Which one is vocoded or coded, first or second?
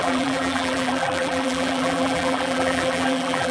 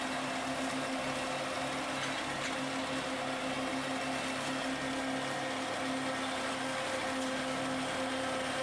first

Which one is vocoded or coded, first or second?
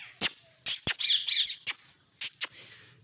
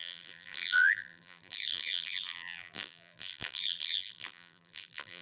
second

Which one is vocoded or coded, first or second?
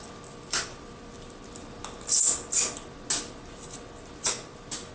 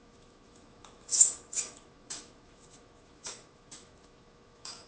second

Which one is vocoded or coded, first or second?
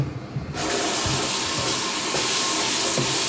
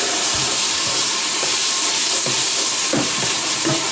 second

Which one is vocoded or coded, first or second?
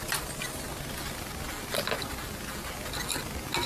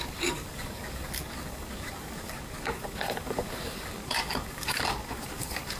second